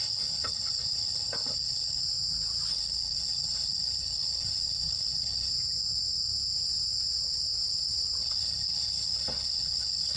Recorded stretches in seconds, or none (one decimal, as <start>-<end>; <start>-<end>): 2.0-2.7; 5.5-8.2